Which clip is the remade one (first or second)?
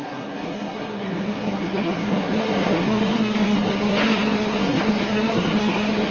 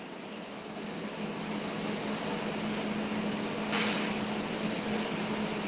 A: first